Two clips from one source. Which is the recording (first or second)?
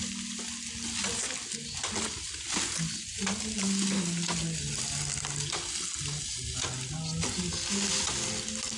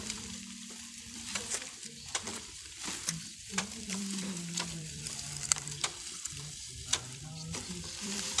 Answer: first